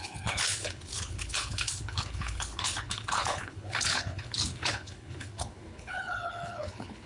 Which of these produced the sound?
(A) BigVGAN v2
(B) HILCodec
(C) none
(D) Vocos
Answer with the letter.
B